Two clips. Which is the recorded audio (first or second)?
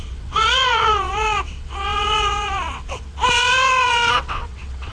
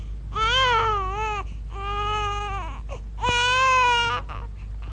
second